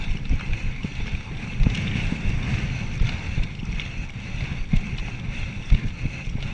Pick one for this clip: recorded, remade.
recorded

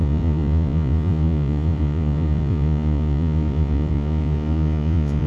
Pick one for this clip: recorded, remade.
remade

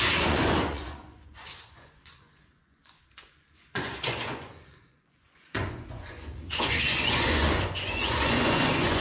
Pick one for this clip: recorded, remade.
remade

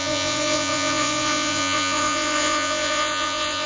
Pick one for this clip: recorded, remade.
remade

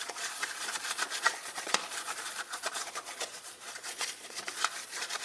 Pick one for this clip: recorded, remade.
remade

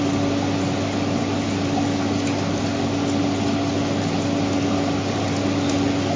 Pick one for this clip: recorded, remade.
recorded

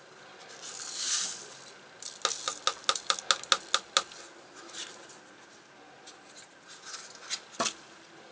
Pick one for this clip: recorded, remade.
recorded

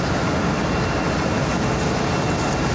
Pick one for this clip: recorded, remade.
recorded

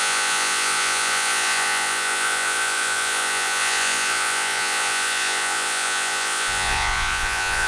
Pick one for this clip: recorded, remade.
remade